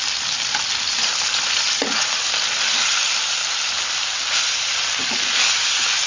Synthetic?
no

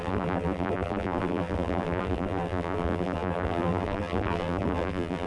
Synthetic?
yes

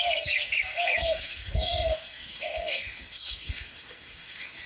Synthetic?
yes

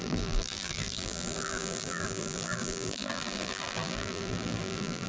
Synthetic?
yes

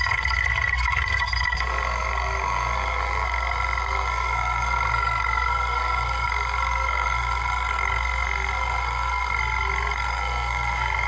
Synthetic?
yes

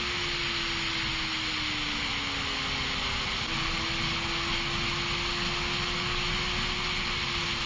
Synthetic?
no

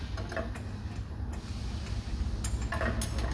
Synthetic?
no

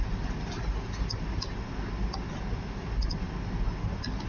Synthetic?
no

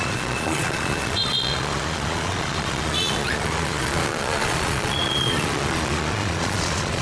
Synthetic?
yes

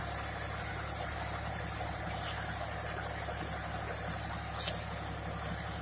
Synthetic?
no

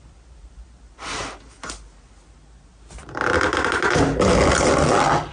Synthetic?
no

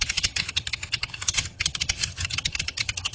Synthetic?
yes